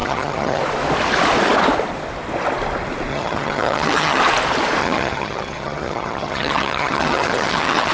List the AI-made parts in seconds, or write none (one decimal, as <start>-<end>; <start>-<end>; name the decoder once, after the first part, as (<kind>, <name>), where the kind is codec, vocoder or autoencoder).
0.0-0.6 (vocoder, HiFi-GAN); 3.1-4.2; 4.8-7.9